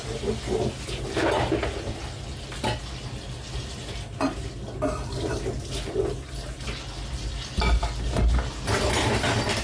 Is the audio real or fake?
real